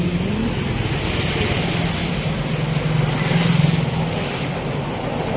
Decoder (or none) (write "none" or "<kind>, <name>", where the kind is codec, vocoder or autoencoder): none